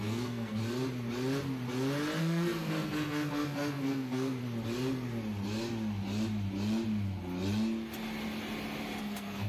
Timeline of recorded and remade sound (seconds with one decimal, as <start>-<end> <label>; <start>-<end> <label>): 0.0-0.6 remade; 0.6-2.2 recorded; 2.2-4.4 remade; 4.4-9.0 recorded; 9.0-9.5 remade